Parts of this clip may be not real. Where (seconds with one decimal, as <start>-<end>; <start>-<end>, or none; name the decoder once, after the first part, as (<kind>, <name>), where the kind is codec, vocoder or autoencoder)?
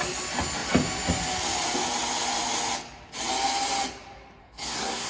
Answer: 4.4-5.1 (codec, SNAC)